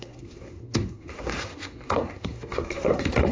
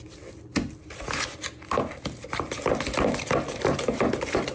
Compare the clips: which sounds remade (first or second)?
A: first